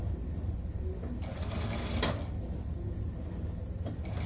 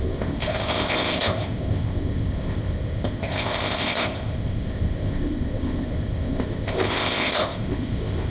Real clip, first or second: first